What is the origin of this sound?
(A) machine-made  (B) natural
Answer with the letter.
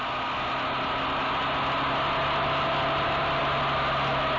B